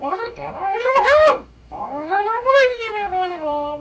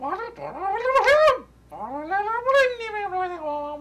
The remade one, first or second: first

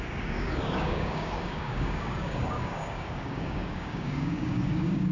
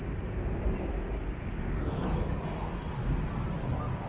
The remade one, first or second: first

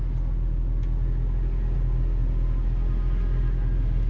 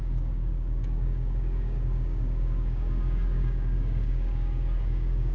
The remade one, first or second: second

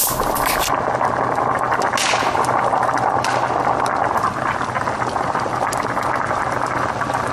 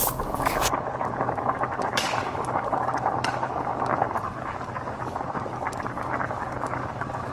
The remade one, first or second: second